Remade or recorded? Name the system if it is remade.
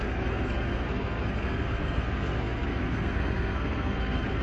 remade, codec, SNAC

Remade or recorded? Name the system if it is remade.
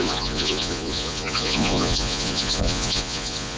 remade, vocoder, Vocos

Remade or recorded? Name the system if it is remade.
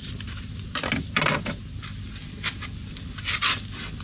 recorded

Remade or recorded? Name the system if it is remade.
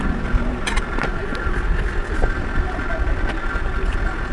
recorded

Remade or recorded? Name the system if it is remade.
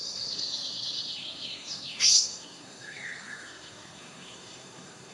remade, codec, SNAC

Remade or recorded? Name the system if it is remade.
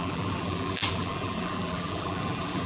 remade, vocoder, BigVGAN v2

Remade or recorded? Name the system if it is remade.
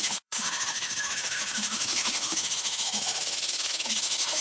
remade, autoencoder, DAC-VAE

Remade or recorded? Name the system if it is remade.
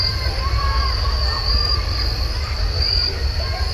recorded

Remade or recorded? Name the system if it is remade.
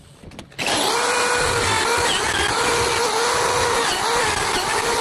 recorded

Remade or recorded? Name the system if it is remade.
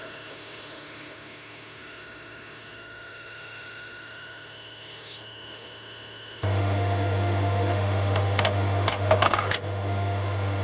remade, autoencoder, DAC-VAE